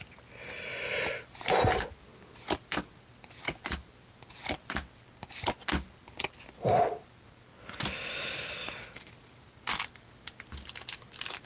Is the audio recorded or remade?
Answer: recorded